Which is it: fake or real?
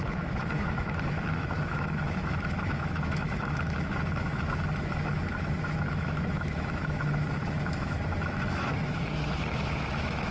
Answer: fake